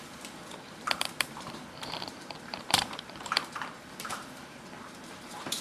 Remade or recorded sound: remade